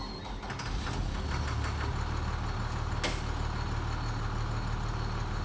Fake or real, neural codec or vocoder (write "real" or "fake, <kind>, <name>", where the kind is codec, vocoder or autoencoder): real